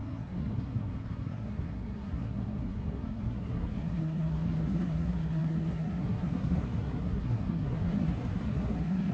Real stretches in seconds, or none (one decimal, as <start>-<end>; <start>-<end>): none